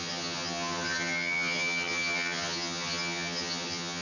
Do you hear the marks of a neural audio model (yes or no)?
yes